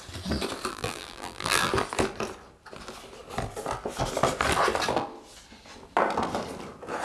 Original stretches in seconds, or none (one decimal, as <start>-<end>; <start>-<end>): 0.0-0.7; 1.7-7.0